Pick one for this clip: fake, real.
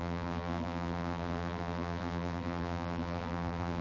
fake